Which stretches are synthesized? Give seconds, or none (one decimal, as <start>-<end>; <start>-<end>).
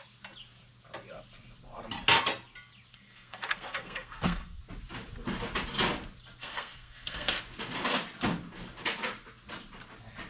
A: 2.9-4.6; 6.4-7.4